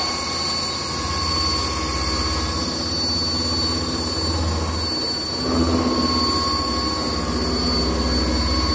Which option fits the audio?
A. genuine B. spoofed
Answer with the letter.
A